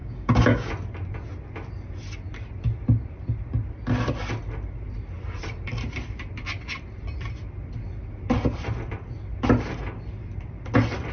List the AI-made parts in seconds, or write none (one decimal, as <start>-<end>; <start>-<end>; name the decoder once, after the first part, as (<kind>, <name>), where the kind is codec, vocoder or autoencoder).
0.0-0.7 (codec, DAC)